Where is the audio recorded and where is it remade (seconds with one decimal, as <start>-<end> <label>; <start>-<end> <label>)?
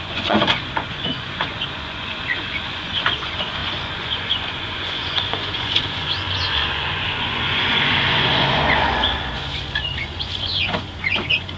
0.0-11.6 remade